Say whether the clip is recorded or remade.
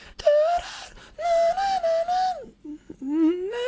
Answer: recorded